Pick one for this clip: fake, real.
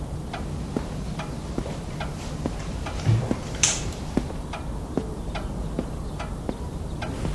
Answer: real